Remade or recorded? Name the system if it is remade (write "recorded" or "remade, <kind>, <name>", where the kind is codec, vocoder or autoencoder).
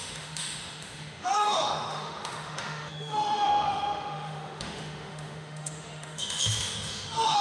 remade, autoencoder, DAC-VAE